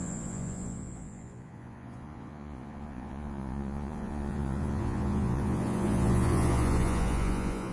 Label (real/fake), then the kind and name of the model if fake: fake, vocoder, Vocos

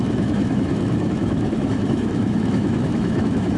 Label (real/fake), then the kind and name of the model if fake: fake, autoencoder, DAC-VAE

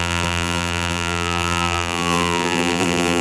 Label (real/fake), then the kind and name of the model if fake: fake, vocoder, BigVGAN v2